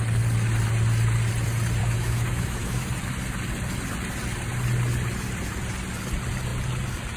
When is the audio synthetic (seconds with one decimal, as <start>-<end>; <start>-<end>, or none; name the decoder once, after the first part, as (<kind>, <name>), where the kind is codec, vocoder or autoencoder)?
1.8-2.9 (autoencoder, DAC-VAE)